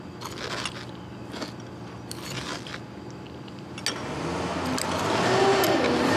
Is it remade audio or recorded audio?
recorded